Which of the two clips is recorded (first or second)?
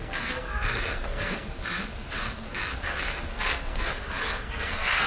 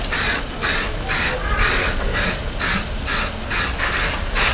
second